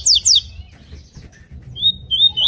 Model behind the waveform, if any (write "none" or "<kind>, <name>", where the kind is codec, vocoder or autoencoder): none